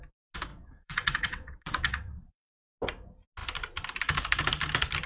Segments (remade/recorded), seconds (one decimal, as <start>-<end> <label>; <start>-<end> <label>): 0.0-0.5 recorded; 0.5-2.5 remade; 2.5-5.1 recorded